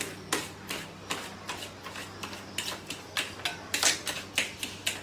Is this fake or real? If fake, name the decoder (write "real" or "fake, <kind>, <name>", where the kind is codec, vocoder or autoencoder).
real